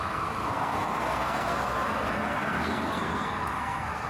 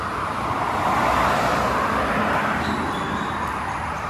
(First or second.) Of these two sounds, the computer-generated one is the first